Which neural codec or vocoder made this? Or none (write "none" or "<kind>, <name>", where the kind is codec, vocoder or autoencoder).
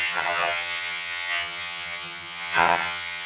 vocoder, HiFi-GAN